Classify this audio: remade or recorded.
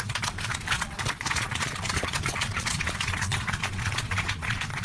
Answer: remade